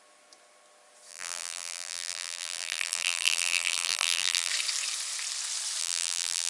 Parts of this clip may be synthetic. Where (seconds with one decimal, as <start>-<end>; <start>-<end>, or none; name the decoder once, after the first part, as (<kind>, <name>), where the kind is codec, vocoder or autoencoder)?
1.1-4.5 (vocoder, BigVGAN v2); 5.8-6.5